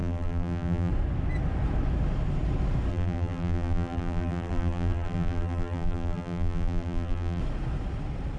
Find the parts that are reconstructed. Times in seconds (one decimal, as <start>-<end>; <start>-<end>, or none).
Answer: 0.0-0.9; 2.9-7.4